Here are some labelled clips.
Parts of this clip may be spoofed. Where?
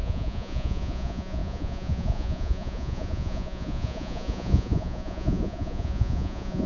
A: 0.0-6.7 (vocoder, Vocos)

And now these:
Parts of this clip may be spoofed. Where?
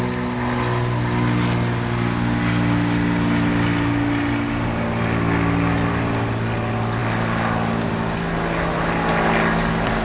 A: none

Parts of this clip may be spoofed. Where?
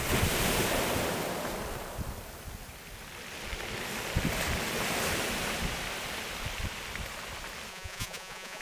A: 7.7-8.6 (vocoder, Vocos)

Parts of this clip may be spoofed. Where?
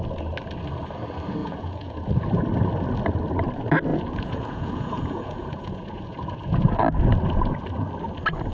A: 1.4-2.1 (vocoder, Vocos); 3.9-6.7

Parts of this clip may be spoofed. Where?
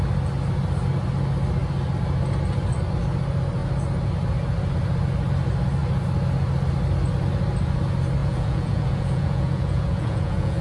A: 8.2-10.6 (vocoder, Vocos)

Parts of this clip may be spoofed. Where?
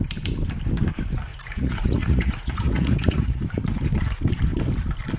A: 1.3-3.4 (vocoder, Vocos)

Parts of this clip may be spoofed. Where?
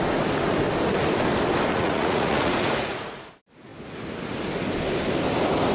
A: 1.7-3.3 (vocoder, Vocos)